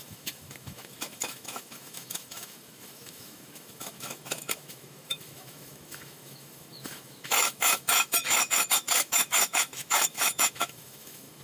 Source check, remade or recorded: remade